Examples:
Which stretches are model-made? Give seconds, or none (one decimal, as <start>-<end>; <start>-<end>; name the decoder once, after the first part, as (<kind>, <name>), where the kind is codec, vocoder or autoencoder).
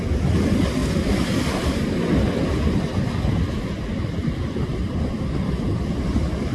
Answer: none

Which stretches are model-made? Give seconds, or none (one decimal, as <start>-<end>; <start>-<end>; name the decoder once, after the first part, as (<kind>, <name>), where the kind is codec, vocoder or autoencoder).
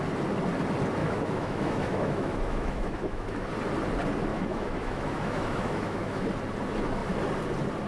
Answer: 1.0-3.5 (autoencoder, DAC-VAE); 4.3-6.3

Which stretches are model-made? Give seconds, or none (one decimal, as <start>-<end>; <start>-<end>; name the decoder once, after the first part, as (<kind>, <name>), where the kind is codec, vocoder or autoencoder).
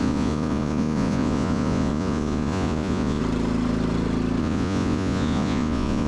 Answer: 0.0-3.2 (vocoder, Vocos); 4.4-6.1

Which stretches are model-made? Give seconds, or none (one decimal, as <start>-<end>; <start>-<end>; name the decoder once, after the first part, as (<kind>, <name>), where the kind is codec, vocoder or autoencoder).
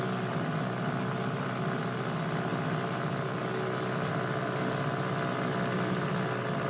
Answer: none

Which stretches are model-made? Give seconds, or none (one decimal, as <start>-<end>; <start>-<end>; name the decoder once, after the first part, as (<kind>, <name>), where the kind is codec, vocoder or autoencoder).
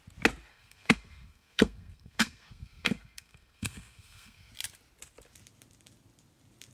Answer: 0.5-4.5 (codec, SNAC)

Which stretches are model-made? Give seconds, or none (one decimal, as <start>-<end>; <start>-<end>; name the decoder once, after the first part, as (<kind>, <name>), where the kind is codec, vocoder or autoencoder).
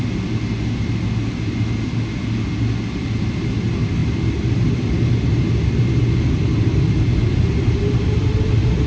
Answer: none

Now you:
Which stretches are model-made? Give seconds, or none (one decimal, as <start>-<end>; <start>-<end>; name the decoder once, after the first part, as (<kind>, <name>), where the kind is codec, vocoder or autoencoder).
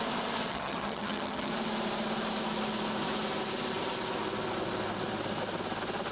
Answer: 0.5-1.5 (vocoder, HiFi-GAN)